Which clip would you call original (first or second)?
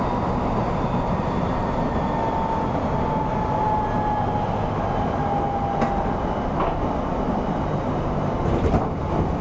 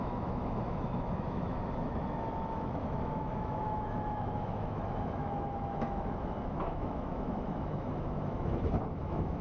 first